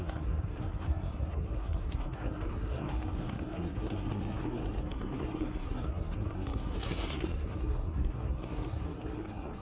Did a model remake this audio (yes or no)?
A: yes